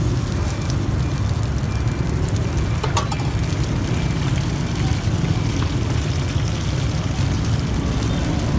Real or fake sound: real